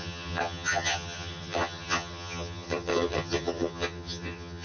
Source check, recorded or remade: remade